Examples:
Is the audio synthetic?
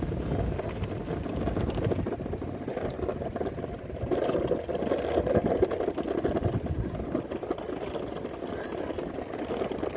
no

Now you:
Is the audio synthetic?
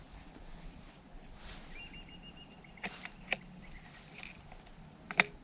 no